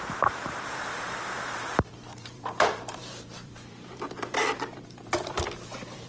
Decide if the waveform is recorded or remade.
remade